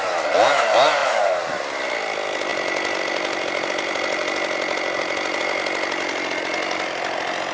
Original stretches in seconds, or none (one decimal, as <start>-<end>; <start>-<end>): 0.0-7.5